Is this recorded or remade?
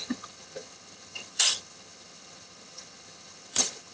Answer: remade